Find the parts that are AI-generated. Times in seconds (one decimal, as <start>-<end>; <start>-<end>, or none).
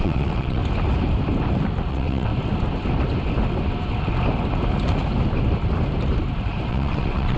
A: 0.0-0.6; 1.9-2.3; 6.7-7.4